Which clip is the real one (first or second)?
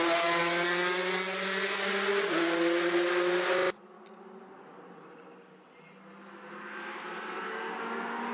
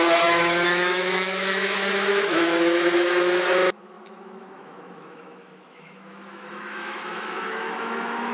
first